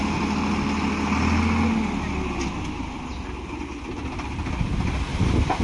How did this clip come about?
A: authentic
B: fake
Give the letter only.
A